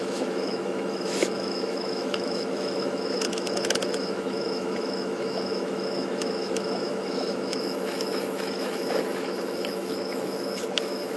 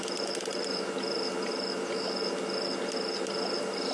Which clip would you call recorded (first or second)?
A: second